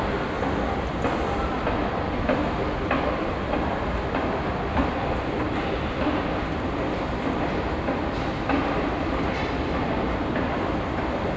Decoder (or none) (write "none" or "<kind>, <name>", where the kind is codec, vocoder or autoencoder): none